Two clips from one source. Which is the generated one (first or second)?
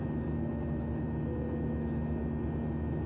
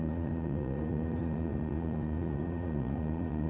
second